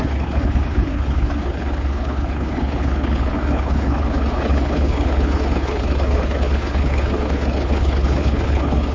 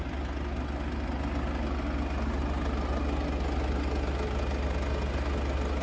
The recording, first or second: second